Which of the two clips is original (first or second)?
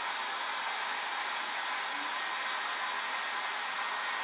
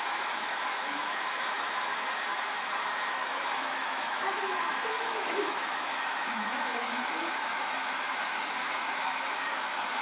first